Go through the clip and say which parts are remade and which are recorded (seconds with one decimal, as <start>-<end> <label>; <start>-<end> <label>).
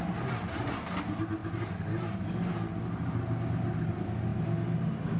0.0-5.2 recorded